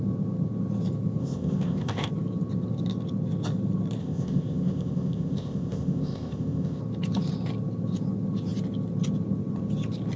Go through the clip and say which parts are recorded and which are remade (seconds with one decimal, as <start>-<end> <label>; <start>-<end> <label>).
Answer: 0.0-1.2 recorded; 1.2-2.1 remade; 2.1-4.0 recorded; 4.0-6.8 remade; 6.8-10.2 recorded